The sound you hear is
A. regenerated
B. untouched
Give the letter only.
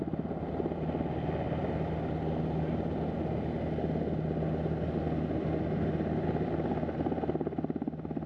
B